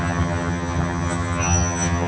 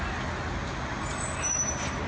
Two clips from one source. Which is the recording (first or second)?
second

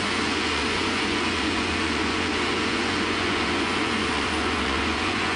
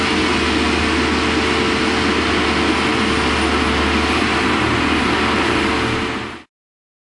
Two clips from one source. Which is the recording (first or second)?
second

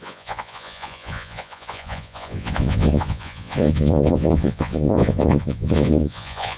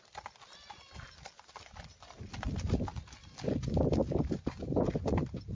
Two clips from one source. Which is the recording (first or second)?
second